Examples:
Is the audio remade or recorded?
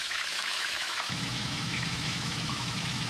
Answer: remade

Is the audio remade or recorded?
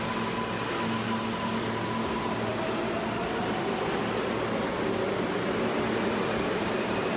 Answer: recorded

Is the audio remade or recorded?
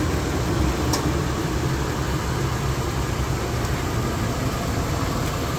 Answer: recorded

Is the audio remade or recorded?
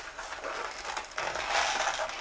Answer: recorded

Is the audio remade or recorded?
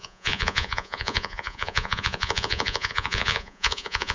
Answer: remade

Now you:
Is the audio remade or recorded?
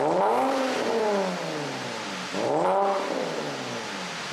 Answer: recorded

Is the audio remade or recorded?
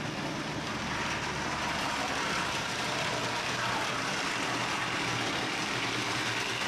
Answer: remade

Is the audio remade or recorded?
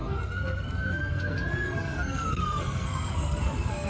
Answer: remade